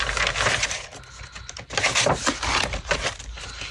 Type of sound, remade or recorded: recorded